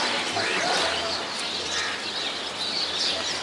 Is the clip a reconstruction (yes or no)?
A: no